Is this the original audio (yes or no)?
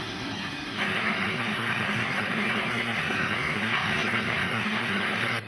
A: no